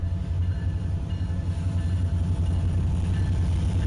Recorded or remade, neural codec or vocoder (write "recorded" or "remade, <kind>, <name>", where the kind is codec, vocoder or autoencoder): recorded